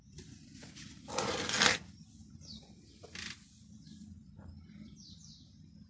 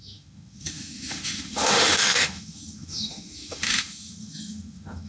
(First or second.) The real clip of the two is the first